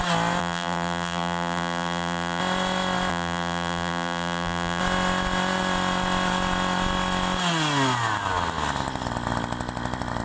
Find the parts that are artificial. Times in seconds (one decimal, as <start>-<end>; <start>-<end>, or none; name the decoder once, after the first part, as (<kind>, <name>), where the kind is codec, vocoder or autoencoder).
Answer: 0.4-2.4 (vocoder, BigVGAN v2); 3.1-4.8